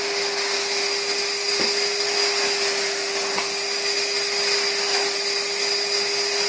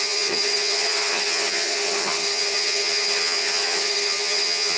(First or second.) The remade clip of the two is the second